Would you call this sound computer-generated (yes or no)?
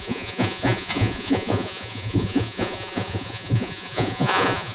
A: yes